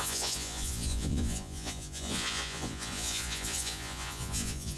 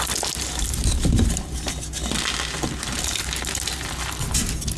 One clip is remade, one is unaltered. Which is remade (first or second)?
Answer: first